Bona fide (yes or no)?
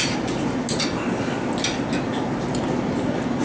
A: yes